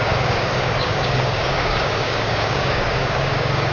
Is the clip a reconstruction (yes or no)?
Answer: yes